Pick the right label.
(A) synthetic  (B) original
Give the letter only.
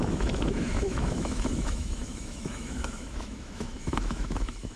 A